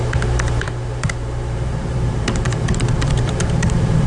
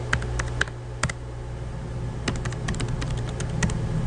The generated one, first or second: first